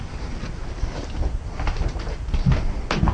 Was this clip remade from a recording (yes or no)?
no